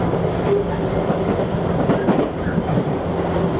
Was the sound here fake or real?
real